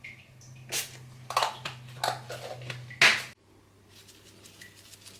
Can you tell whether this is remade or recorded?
recorded